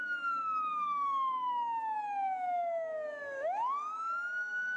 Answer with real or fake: fake